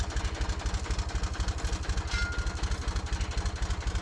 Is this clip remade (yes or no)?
no